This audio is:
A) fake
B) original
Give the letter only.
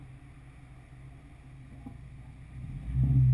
B